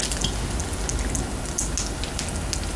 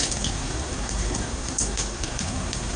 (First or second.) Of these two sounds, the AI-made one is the second